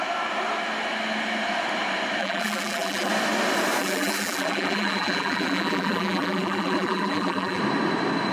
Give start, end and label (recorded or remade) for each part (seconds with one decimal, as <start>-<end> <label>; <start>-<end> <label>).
0.0-2.2 recorded; 2.2-3.1 remade; 3.1-3.8 recorded; 3.8-7.6 remade; 7.6-8.3 recorded